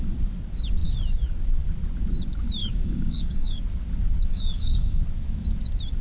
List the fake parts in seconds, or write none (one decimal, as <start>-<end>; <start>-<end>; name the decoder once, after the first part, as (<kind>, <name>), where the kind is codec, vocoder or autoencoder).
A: 2.6-3.6 (codec, DAC); 4.3-5.0